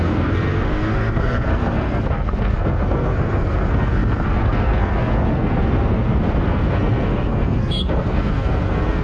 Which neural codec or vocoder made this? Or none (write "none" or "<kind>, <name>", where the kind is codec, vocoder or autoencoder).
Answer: codec, SNAC